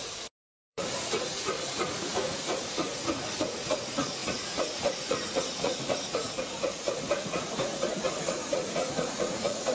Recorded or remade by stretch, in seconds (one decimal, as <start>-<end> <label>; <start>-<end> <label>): 0.0-9.7 remade